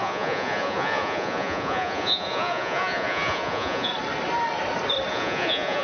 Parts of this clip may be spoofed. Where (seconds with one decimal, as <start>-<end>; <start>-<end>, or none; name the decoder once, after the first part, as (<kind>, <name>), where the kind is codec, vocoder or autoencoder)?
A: 0.0-3.9 (vocoder, Vocos); 5.1-5.8